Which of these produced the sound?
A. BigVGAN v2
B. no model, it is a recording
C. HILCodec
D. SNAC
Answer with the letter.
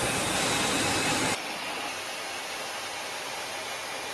B